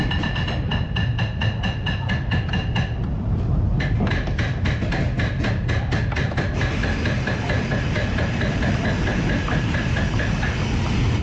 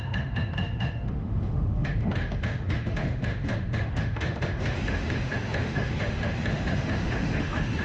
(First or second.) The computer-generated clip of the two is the second